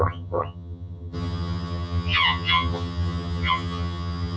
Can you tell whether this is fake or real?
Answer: fake